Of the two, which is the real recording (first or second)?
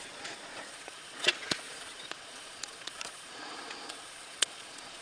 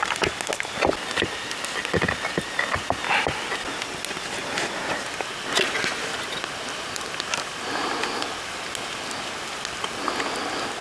second